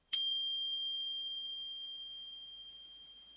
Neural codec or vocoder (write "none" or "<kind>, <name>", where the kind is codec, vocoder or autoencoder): vocoder, BigVGAN v2